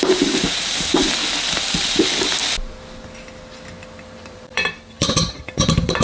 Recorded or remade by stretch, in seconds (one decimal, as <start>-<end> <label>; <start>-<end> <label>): 0.0-1.2 remade; 1.2-1.9 recorded; 1.9-2.4 remade; 2.4-4.2 recorded; 4.2-6.0 remade